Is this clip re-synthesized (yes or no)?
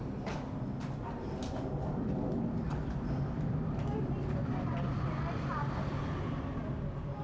no